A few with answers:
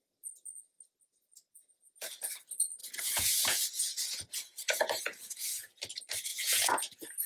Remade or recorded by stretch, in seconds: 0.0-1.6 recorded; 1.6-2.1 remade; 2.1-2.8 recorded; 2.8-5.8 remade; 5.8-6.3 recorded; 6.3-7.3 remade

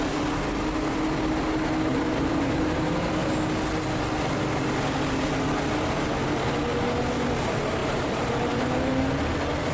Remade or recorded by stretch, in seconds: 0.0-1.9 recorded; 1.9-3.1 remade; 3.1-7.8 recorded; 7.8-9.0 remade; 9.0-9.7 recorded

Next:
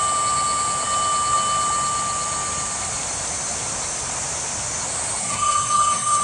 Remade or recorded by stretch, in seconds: 0.0-5.2 recorded; 5.2-6.2 remade

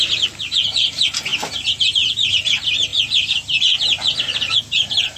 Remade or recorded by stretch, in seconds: 0.0-1.3 remade; 1.3-1.9 recorded; 1.9-2.9 remade; 2.9-4.6 recorded; 4.6-5.2 remade

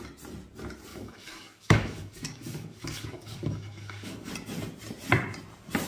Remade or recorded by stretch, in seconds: 0.0-0.9 recorded; 0.9-4.3 remade; 4.3-5.9 recorded

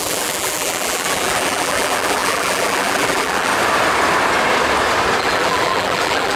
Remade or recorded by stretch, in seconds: 0.0-3.5 remade; 3.5-5.2 recorded; 5.2-6.4 remade